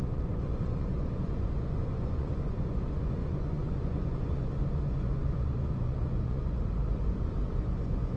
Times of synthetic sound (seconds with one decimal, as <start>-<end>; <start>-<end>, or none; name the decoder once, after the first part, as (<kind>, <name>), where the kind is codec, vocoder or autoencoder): 0.0-8.2 (vocoder, Vocos)